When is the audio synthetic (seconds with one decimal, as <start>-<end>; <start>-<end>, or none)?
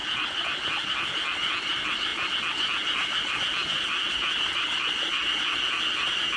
none